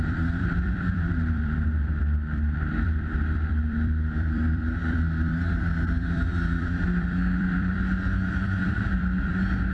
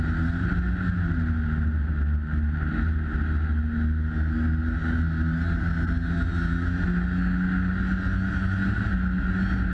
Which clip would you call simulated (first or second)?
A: first